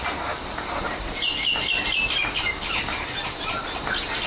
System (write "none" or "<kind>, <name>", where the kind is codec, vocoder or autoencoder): none